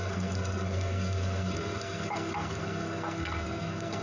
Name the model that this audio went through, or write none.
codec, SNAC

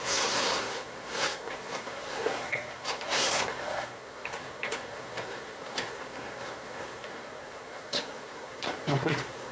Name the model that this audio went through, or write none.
codec, SNAC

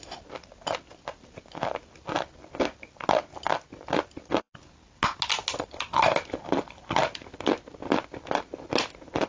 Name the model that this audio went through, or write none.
none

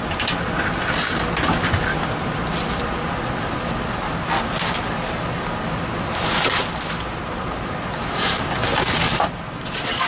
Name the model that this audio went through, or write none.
none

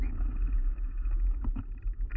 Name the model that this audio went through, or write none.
none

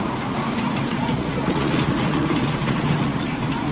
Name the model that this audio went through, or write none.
vocoder, Vocos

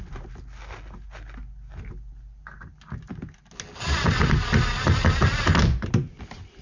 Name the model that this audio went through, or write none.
none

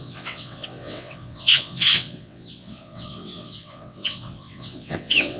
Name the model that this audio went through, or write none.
vocoder, WaveNeXt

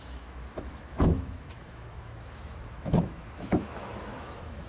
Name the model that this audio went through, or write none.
autoencoder, DAC-VAE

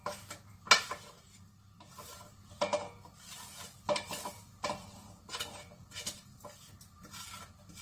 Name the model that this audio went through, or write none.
none